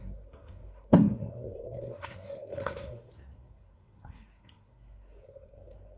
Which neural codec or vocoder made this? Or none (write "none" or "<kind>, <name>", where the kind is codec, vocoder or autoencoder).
codec, SNAC